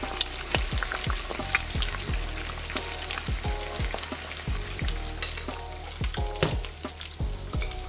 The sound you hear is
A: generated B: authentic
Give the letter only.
B